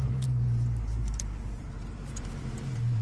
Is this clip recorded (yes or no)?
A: no